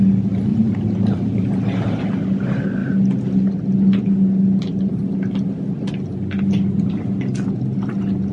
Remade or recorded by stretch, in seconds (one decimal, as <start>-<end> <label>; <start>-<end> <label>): 0.0-0.5 recorded; 0.5-2.0 remade; 2.0-8.3 recorded